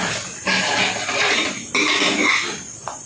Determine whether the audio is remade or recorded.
recorded